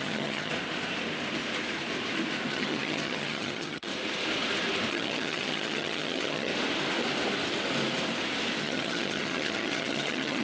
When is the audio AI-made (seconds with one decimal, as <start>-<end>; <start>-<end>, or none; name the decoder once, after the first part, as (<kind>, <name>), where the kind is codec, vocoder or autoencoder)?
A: 0.0-0.5 (vocoder, HiFi-GAN); 2.5-3.9; 4.9-6.5; 8.6-10.4